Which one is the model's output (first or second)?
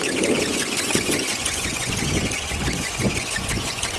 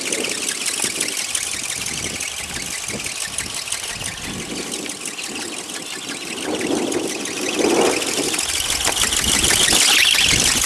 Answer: first